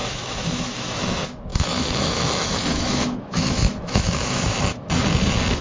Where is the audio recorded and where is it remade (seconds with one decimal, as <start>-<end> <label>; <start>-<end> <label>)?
0.0-1.0 remade; 1.0-1.5 recorded; 1.5-4.9 remade; 4.9-5.6 recorded